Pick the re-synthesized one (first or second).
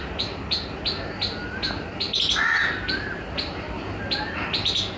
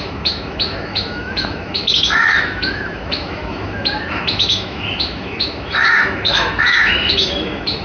second